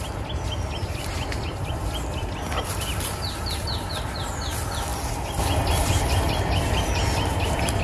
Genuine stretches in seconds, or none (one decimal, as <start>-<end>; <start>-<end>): 0.0-7.8